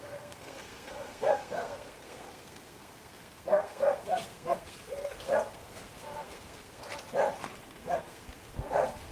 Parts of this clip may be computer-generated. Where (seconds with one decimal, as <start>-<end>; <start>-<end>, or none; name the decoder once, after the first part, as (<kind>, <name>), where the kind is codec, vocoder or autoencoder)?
0.0-6.9 (codec, SNAC); 7.6-9.1